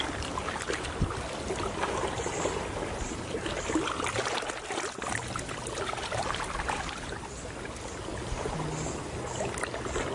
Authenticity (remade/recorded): recorded